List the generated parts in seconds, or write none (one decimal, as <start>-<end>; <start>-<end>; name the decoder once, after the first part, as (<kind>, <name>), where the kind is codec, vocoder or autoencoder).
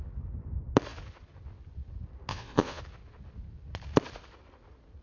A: 2.3-2.8 (vocoder, Vocos)